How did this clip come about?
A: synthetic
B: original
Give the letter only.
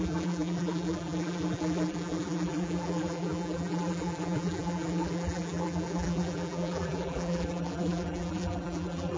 A